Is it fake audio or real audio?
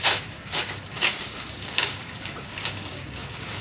fake